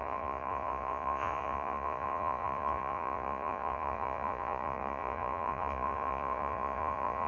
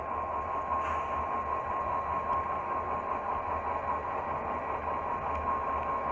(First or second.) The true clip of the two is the second